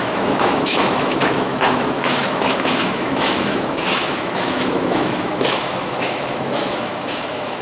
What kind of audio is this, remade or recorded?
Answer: remade